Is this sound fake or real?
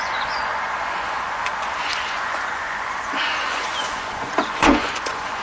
fake